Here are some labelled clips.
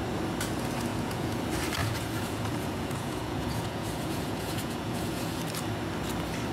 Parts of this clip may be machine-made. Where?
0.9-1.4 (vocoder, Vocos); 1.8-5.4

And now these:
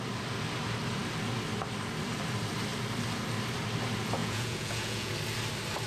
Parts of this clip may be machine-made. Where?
4.2-5.1 (vocoder, Vocos)

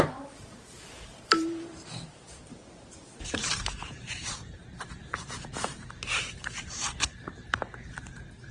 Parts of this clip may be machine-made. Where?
0.0-2.6 (vocoder, BigVGAN v2); 3.3-8.5

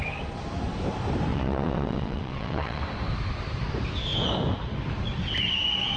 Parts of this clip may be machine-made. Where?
1.3-2.8 (vocoder, WaveNeXt)